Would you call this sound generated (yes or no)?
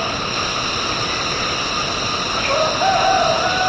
no